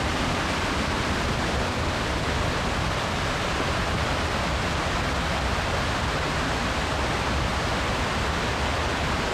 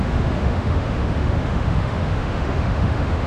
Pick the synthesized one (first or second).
second